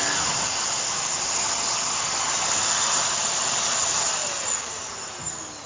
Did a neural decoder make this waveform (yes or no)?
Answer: no